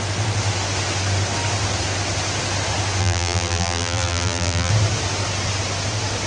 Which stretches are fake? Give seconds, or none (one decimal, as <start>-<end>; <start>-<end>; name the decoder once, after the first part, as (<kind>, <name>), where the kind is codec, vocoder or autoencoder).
3.0-4.7 (vocoder, BigVGAN v2)